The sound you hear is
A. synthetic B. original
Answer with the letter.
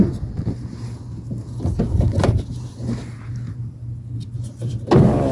A